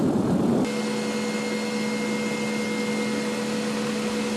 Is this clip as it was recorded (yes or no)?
yes